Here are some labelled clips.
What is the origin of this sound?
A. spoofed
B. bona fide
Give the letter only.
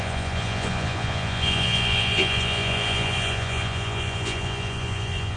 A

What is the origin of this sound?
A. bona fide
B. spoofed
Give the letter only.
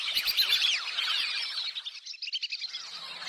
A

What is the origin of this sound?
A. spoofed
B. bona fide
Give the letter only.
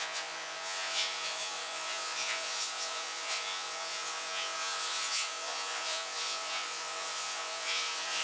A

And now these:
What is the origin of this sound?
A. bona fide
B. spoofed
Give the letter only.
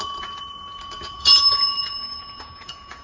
B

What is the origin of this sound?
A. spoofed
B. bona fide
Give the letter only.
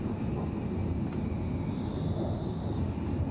B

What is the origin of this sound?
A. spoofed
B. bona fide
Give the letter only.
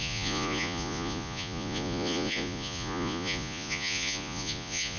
A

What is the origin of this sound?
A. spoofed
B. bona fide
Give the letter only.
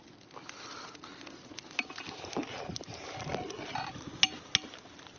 B